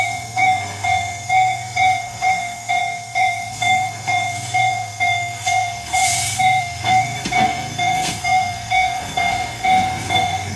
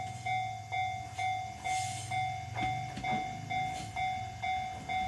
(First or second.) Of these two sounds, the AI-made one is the first